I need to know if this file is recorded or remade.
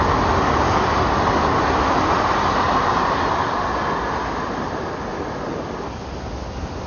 recorded